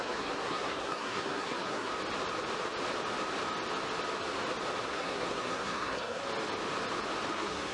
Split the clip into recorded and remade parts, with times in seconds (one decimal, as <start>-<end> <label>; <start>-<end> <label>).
0.0-1.9 remade; 1.9-4.8 recorded; 4.8-6.2 remade; 6.2-7.3 recorded; 7.3-7.7 remade

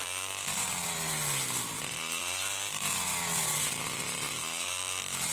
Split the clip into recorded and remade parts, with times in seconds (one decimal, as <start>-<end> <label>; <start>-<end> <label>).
0.0-5.3 recorded

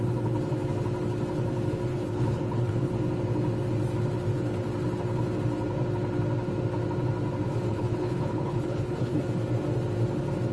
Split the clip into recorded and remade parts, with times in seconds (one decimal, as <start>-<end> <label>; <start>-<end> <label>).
0.0-1.9 recorded; 1.9-2.9 remade; 2.9-7.7 recorded; 7.7-9.2 remade; 9.2-10.5 recorded

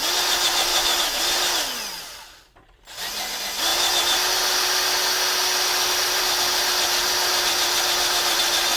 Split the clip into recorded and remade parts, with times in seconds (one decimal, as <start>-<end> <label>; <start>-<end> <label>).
0.0-0.7 recorded; 0.7-1.2 remade; 1.2-8.8 recorded